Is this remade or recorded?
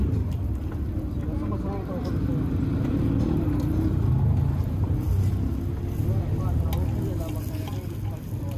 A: recorded